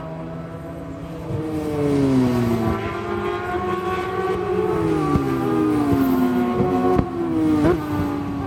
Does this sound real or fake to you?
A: real